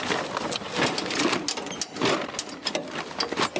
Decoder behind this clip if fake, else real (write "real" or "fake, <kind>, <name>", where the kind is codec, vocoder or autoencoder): real